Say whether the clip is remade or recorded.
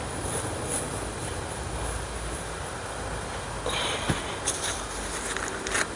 recorded